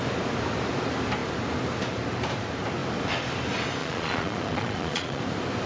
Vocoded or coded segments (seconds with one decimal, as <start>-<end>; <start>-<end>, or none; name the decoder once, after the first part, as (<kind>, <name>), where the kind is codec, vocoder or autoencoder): 3.8-5.2 (vocoder, Vocos)